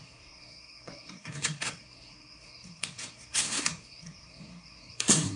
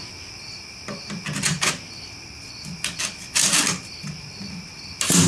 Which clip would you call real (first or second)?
second